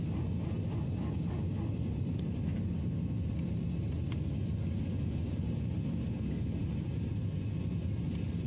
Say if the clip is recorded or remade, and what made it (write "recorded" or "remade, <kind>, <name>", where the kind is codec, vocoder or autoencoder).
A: recorded